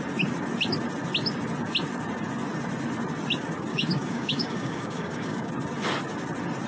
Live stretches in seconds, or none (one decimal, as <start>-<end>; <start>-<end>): 0.0-3.7; 5.5-6.7